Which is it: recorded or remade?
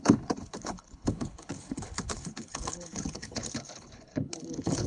remade